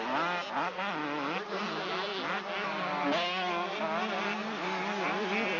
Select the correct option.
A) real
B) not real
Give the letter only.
A